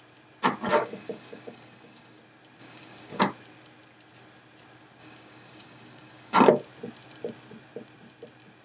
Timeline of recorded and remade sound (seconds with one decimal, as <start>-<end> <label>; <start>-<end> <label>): 0.0-0.7 recorded; 0.7-2.2 remade; 2.2-2.6 recorded; 2.6-3.2 remade; 3.2-5.0 recorded; 5.0-6.4 remade; 6.4-8.6 recorded